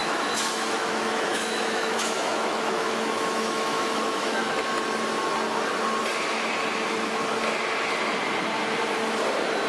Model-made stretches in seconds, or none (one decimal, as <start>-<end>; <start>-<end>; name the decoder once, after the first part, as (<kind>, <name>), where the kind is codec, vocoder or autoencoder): 0.0-4.5 (autoencoder, DAC-VAE)